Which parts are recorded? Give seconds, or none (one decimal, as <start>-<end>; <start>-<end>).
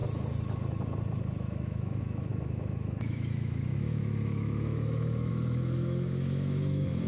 0.0-1.3